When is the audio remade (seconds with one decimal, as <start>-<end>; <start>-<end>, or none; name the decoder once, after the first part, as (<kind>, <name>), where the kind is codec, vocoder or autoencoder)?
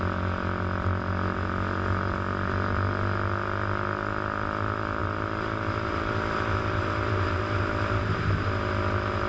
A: none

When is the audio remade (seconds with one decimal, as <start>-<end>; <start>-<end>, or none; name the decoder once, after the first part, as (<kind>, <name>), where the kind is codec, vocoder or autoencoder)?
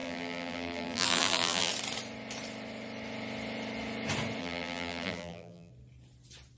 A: 0.0-1.7 (vocoder, BigVGAN v2); 4.4-5.7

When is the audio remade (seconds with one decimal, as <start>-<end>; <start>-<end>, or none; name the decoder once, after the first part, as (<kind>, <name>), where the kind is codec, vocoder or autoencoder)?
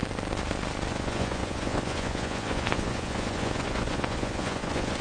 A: 0.9-5.0 (vocoder, Vocos)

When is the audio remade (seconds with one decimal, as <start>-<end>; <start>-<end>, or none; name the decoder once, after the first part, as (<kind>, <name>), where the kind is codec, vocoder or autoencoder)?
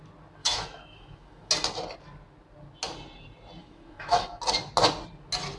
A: 0.4-1.5 (autoencoder, DAC-VAE); 3.6-4.4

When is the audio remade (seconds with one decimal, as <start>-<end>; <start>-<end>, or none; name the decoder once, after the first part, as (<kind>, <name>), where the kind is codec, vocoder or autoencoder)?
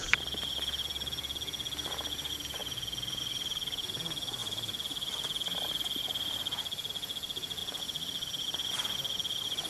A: none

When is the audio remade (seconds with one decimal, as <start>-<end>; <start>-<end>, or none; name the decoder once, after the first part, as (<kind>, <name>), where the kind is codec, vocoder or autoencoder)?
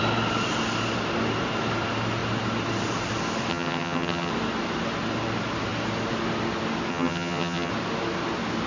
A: 3.5-4.3 (vocoder, HiFi-GAN); 6.9-7.7